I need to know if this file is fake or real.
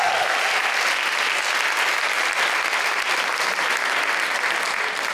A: real